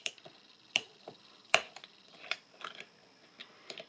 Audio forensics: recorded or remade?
remade